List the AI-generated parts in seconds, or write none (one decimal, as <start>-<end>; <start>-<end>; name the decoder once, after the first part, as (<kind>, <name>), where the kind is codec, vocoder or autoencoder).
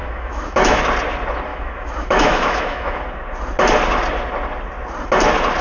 0.0-0.8 (autoencoder, DAC-VAE); 1.5-3.0